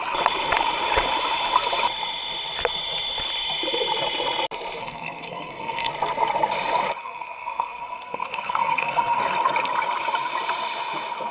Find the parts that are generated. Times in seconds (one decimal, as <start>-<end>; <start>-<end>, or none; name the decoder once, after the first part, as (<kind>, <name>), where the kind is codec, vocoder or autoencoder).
4.8-5.9 (codec, SNAC); 7.0-9.2